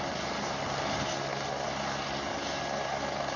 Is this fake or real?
real